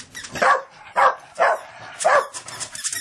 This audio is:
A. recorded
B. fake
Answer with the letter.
A